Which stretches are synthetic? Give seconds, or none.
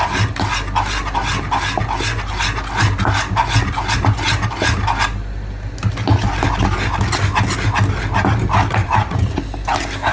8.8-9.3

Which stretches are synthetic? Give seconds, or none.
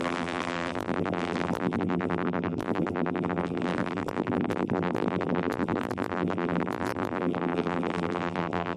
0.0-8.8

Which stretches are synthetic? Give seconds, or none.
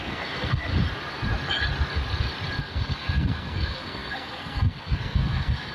0.0-0.7; 2.6-5.7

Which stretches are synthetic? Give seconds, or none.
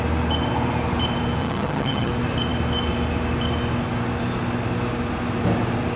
1.4-2.1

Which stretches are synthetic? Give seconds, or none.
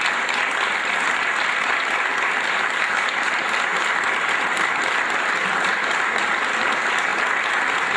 0.0-7.1; 7.6-8.0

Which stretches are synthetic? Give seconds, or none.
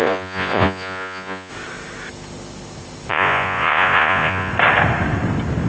0.0-1.5; 3.1-4.5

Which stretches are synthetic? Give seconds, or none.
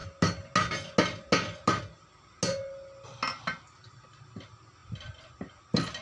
none